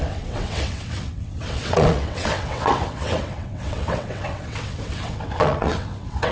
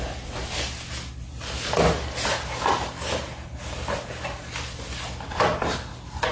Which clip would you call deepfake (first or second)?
first